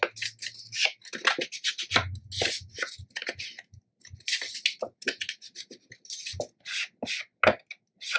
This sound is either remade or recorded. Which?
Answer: recorded